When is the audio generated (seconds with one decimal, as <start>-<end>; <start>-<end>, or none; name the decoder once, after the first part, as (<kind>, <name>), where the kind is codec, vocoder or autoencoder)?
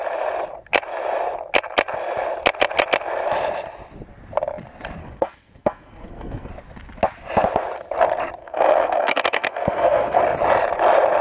5.0-6.5 (codec, SNAC); 8.4-10.2